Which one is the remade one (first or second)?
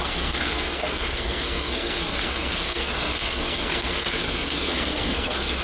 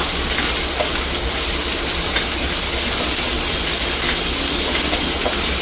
first